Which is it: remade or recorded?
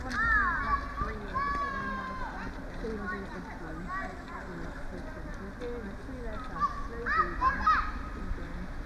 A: recorded